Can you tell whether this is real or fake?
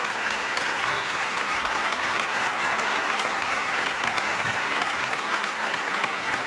fake